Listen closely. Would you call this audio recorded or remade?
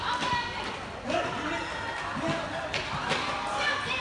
recorded